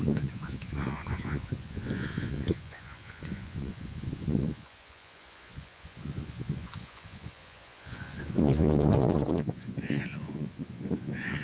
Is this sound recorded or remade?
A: remade